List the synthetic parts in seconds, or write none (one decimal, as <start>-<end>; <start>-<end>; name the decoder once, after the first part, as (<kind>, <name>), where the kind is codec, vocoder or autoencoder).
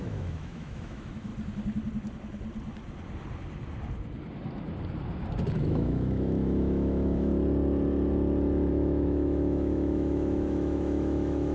0.0-1.3 (autoencoder, DAC-VAE); 5.5-7.3; 8.7-11.5